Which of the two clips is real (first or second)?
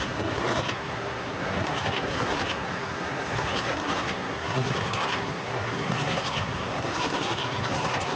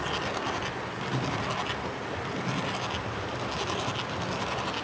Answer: second